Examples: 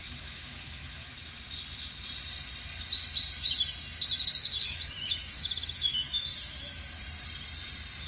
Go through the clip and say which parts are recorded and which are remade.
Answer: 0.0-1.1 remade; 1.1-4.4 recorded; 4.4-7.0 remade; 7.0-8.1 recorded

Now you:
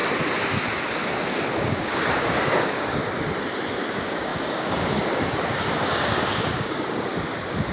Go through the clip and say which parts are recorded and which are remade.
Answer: 0.0-1.6 recorded; 1.6-3.0 remade; 3.0-3.9 recorded; 3.9-7.1 remade; 7.1-7.7 recorded

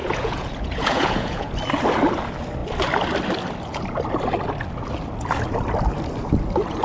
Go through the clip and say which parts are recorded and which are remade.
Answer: 0.0-1.5 remade; 1.5-6.8 recorded

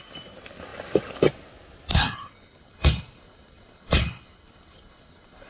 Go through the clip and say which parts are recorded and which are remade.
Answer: 0.0-1.9 recorded; 1.9-5.5 remade

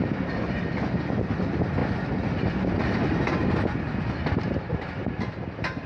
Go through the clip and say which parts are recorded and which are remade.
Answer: 0.0-5.9 recorded

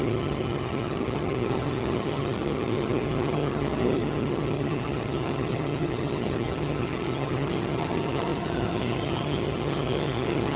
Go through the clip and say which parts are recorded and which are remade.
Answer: 0.0-10.6 remade

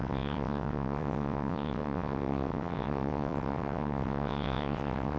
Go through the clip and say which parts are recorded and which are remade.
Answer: 0.0-5.2 remade

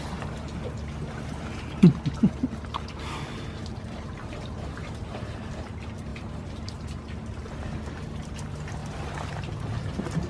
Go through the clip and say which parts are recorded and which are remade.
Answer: 0.0-3.6 recorded; 3.6-5.6 remade; 5.6-10.3 recorded